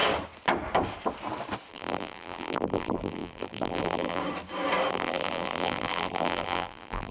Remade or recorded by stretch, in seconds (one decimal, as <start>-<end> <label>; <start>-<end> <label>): 0.0-1.7 recorded; 1.7-4.2 remade; 4.2-4.9 recorded; 4.9-7.1 remade

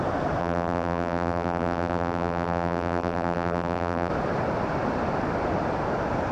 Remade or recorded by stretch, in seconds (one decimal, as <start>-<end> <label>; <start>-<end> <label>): 0.0-0.4 recorded; 0.4-4.1 remade; 4.1-6.3 recorded